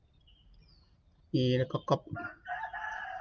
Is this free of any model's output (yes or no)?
yes